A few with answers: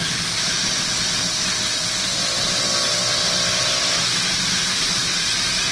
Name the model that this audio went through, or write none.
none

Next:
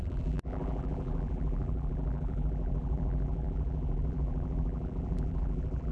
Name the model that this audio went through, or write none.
vocoder, BigVGAN v2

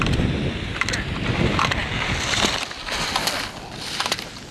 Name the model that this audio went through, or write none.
none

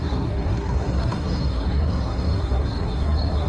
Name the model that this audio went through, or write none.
codec, SNAC